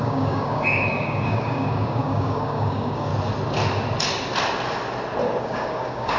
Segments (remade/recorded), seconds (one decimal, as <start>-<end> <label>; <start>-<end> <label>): 0.0-3.1 remade; 3.1-5.4 recorded; 5.4-6.2 remade